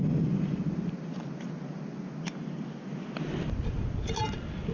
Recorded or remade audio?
recorded